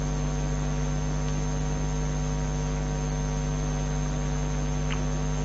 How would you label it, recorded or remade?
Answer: recorded